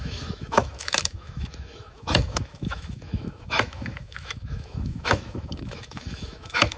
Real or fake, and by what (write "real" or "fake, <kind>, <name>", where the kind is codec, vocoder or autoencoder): fake, autoencoder, DAC-VAE